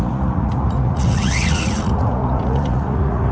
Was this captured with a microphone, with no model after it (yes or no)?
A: no